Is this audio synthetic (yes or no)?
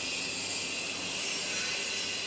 no